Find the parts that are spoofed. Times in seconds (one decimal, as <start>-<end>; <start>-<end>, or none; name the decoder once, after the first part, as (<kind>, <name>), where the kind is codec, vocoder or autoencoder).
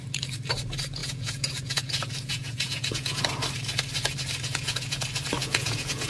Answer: 1.0-3.2 (vocoder, Vocos); 4.5-5.0; 5.4-6.1